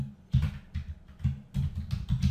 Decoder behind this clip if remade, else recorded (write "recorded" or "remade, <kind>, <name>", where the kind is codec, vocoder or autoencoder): recorded